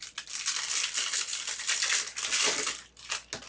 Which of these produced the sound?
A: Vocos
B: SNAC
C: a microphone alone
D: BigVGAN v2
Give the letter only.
C